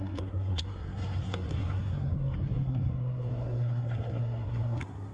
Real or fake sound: fake